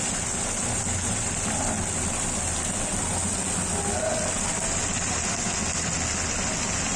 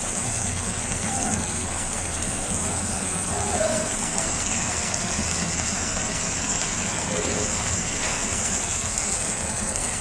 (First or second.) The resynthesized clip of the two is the second